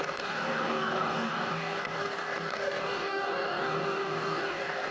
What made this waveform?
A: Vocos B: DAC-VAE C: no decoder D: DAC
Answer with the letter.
D